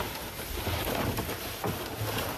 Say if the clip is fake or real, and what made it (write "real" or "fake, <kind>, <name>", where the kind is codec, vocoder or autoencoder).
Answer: real